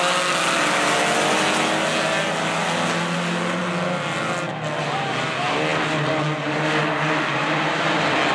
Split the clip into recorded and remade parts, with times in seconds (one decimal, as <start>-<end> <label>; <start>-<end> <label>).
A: 0.0-8.3 recorded